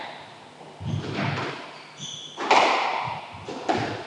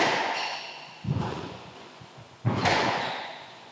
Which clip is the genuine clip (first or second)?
first